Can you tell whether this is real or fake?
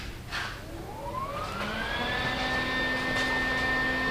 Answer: real